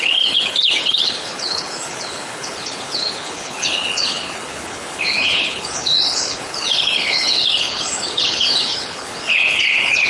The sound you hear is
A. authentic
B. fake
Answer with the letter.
B